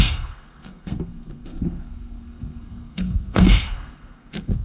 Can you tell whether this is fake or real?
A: fake